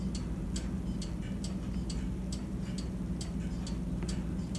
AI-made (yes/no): no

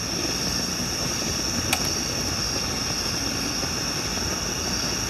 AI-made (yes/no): no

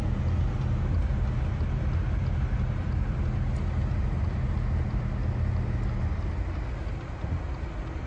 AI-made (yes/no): no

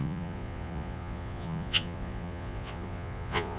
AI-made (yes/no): yes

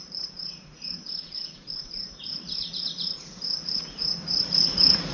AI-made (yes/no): yes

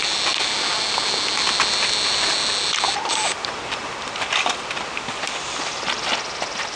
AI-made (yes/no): no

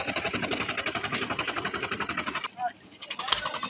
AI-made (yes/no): no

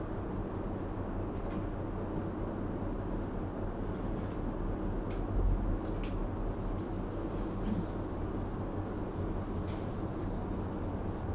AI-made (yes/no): no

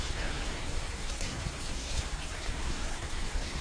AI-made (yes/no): yes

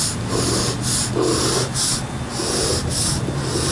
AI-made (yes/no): no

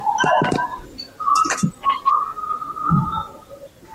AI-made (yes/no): no